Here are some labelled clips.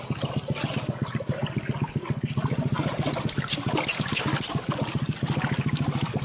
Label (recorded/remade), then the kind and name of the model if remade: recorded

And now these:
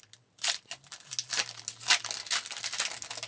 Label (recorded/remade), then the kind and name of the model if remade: recorded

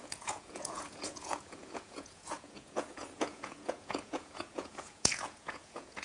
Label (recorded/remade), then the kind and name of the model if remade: remade, vocoder, Vocos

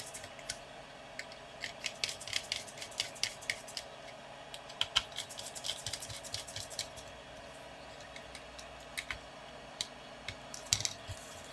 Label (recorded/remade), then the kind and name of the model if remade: recorded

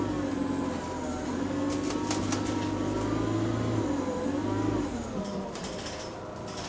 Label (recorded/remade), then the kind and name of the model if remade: recorded